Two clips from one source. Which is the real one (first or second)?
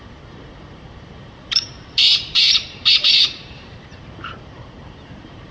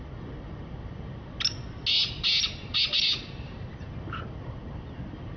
second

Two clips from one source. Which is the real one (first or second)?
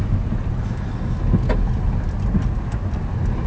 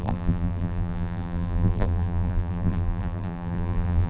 first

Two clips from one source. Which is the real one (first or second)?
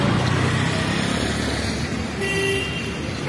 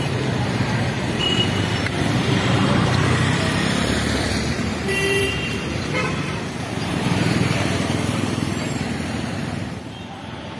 first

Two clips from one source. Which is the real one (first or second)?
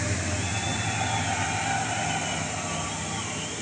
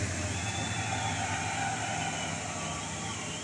first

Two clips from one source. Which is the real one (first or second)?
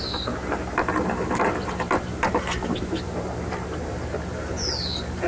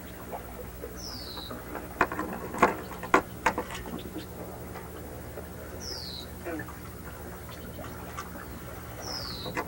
second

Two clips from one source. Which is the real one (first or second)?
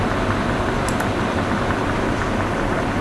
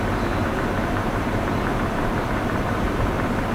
first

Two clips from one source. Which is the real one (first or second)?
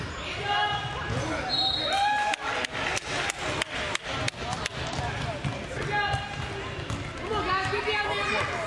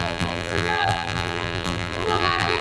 first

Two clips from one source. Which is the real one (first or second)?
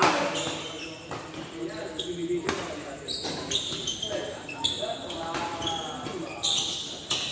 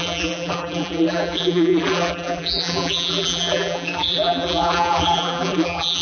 first